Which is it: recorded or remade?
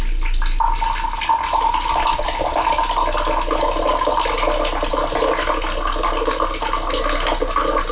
recorded